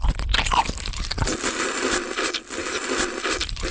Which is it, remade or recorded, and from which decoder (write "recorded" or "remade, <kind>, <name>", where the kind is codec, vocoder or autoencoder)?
recorded